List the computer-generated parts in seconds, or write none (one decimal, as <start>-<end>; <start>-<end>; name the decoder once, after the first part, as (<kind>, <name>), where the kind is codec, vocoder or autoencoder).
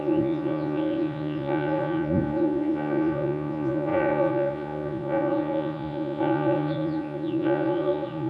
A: 0.0-8.3 (vocoder, Vocos)